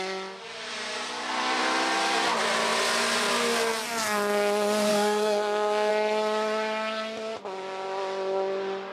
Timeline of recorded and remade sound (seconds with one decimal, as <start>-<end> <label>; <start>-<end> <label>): 0.0-4.9 recorded; 4.9-5.9 remade; 5.9-8.9 recorded